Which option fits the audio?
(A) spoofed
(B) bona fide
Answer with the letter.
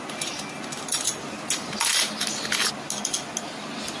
B